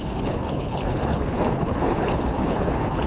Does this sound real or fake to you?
fake